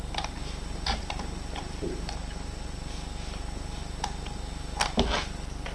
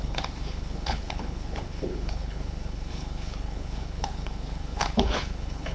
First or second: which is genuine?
first